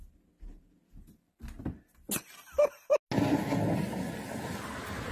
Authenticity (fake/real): real